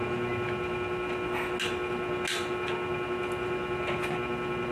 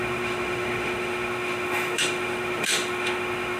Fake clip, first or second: second